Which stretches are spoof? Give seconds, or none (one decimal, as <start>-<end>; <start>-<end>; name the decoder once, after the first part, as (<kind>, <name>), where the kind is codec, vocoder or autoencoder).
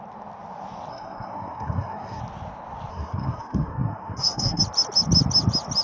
0.9-2.2 (codec, SNAC); 2.9-4.6